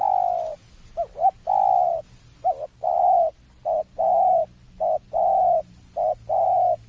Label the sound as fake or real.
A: real